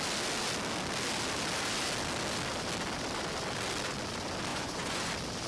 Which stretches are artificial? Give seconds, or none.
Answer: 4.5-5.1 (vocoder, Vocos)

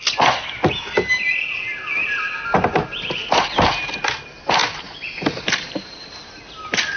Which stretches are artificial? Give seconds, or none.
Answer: none

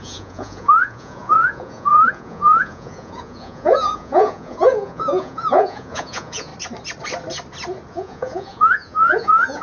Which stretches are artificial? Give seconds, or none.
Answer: 0.0-6.5 (vocoder, Vocos); 7.9-9.6

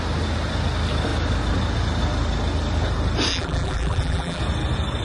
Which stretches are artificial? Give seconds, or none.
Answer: 3.3-4.4 (vocoder, BigVGAN v2)

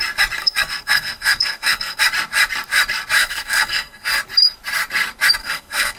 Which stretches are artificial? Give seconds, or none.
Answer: 0.4-2.0 (codec, SNAC); 3.2-4.2; 5.4-6.0

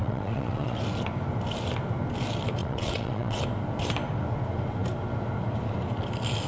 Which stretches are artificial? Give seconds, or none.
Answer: 0.0-0.8 (vocoder, WaveNeXt); 2.6-3.4

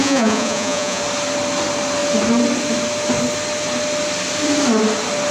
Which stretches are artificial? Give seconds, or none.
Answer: 0.0-1.0 (vocoder, Vocos)

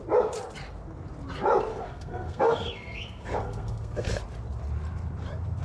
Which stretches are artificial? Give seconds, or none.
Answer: 1.7-4.1 (codec, SNAC)